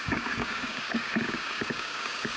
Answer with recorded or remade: remade